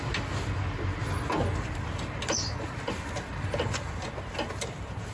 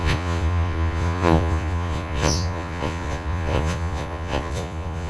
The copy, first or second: second